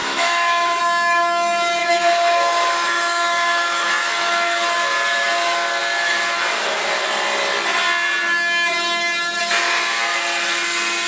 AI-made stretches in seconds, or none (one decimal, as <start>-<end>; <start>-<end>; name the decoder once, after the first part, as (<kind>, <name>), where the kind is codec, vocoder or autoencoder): 0.0-0.8 (autoencoder, DAC-VAE); 1.8-4.9